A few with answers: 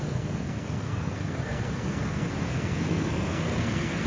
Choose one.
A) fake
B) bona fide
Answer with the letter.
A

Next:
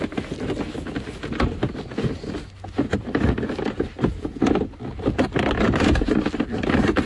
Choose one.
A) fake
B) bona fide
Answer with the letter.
B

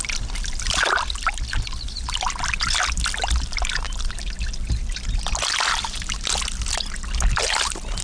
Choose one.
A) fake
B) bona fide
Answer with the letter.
B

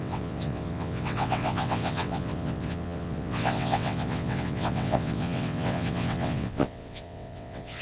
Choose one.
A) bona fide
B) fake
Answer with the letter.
B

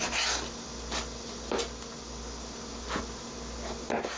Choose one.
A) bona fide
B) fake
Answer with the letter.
A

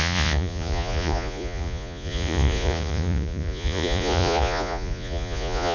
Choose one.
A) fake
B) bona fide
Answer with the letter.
A